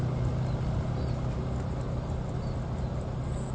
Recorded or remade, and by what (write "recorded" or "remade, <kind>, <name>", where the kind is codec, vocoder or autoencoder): recorded